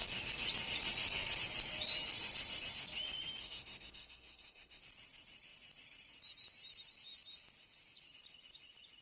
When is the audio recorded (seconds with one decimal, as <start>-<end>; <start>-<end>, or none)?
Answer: 0.0-3.4; 4.8-9.0